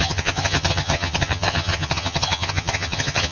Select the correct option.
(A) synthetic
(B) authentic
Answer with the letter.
A